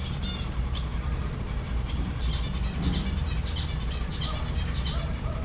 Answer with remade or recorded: recorded